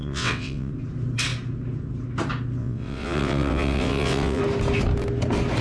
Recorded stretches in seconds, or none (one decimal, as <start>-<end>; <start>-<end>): 0.7-2.6; 4.4-5.6